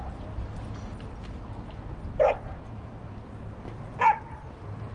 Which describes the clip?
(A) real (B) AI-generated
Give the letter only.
A